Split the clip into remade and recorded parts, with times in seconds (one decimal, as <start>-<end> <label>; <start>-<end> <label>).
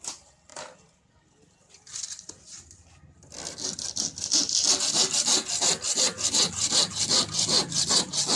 0.0-8.4 recorded